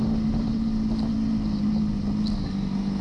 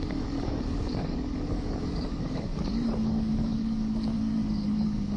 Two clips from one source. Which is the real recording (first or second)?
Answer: first